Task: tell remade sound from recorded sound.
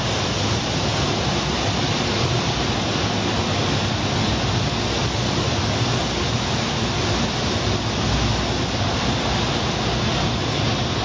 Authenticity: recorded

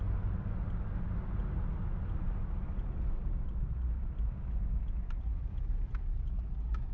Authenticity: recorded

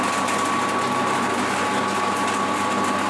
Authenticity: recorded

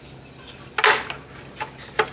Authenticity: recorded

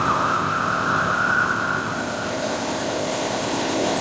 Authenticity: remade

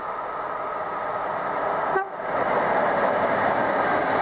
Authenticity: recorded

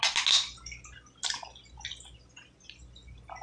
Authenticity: recorded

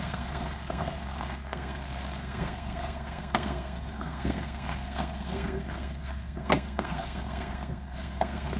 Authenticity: remade